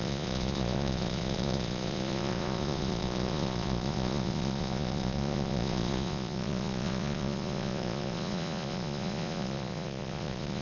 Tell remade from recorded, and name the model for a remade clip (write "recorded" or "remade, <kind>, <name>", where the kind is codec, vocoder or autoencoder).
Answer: remade, vocoder, Vocos